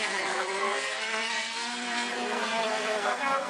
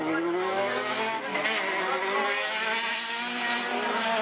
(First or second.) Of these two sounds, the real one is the second